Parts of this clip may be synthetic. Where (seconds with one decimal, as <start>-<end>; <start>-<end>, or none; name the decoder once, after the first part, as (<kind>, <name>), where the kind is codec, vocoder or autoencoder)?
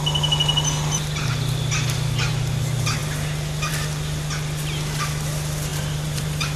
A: 5.7-6.6 (vocoder, BigVGAN v2)